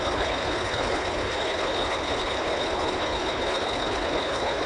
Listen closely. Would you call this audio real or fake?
fake